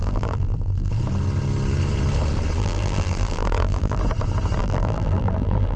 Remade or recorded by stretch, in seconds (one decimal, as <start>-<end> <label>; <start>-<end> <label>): 0.0-0.9 remade; 0.9-2.6 recorded; 2.6-4.0 remade; 4.0-4.6 recorded; 4.6-5.8 remade